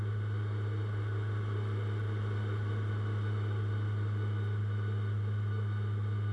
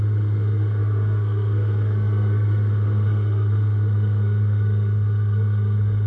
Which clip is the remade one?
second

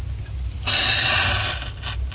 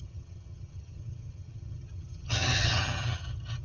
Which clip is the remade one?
second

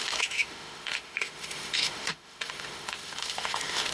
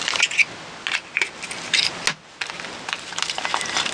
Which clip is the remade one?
first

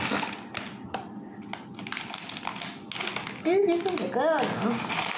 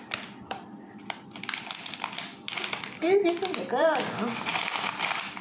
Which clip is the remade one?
second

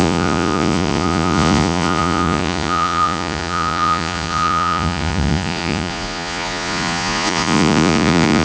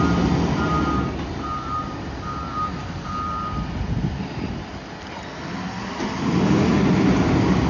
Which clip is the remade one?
first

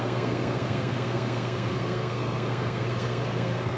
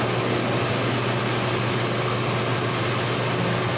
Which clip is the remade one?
first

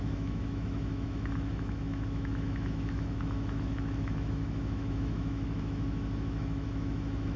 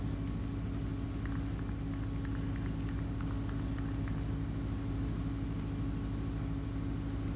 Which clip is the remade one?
first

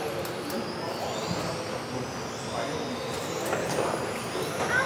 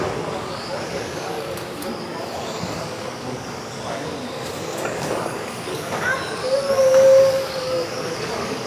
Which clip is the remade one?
second